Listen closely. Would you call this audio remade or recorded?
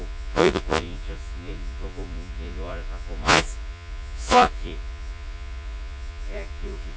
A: remade